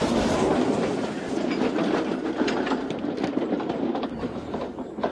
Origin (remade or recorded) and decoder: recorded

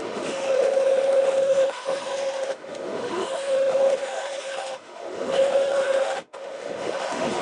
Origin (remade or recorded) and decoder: remade, autoencoder, DAC-VAE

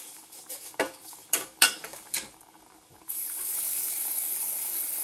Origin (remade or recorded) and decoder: remade, codec, DAC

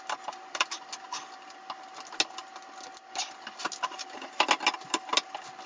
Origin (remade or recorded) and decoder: recorded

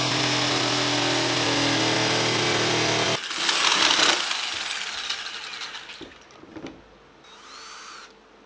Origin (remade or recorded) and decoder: recorded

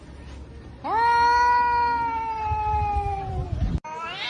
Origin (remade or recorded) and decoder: recorded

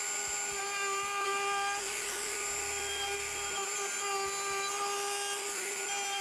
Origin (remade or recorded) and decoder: recorded